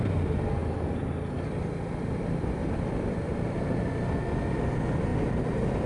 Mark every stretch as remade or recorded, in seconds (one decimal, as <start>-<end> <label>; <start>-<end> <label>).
0.0-5.9 recorded